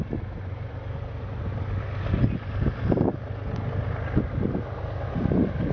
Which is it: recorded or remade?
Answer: recorded